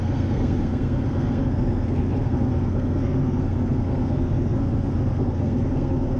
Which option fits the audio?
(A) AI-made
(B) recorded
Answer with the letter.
A